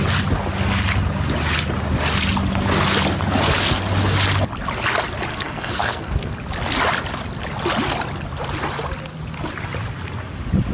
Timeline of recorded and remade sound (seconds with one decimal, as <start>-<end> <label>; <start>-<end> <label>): 0.0-5.3 recorded; 5.3-6.3 remade; 6.3-10.7 recorded